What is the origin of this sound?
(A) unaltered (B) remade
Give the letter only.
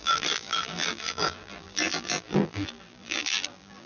B